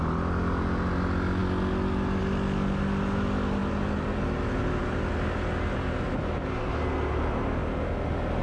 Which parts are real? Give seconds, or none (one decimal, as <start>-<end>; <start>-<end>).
0.0-8.4